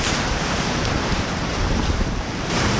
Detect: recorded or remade remade